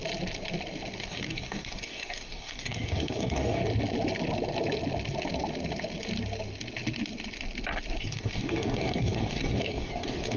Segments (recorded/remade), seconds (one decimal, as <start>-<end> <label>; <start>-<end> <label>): 0.0-1.0 recorded; 1.0-3.6 remade; 3.6-8.0 recorded; 8.0-10.4 remade